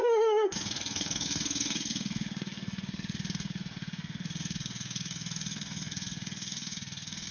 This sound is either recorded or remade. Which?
remade